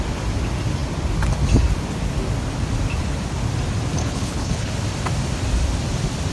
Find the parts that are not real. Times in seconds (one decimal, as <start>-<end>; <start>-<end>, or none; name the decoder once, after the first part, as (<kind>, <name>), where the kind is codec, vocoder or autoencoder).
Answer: 4.0-4.7 (codec, HILCodec)